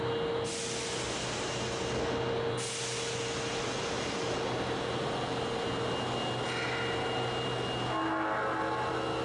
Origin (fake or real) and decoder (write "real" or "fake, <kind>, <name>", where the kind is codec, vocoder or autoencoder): real